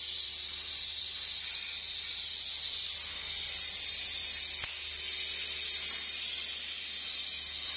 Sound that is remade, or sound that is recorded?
recorded